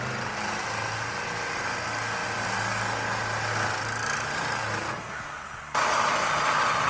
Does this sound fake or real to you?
real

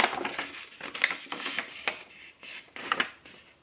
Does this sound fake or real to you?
real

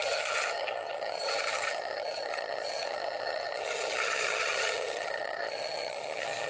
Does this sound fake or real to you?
fake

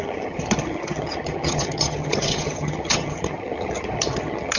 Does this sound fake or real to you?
fake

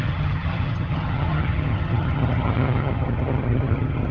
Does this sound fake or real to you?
fake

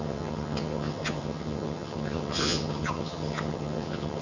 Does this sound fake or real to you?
fake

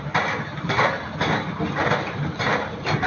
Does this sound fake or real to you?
real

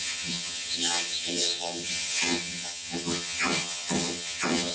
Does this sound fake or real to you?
fake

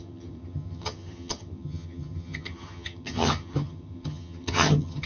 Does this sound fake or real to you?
fake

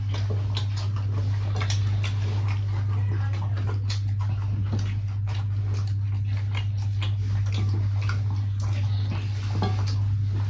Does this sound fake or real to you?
real